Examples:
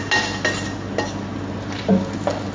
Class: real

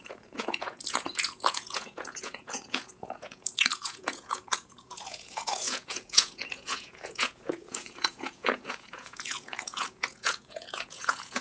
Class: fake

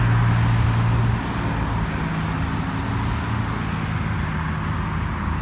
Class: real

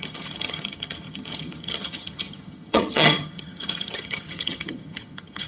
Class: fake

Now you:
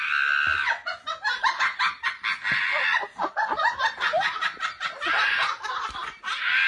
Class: real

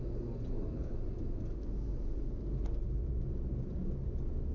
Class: real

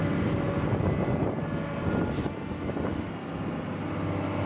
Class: real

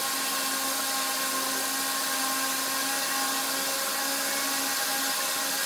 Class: real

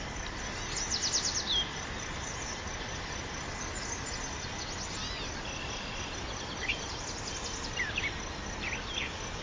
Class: real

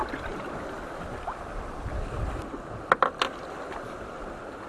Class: real